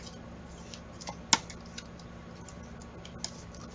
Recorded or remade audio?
recorded